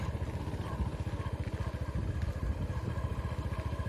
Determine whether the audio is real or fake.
fake